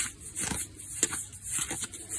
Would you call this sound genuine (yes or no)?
yes